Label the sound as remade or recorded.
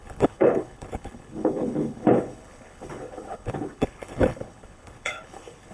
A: remade